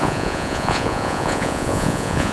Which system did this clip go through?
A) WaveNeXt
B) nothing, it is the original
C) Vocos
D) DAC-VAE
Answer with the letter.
C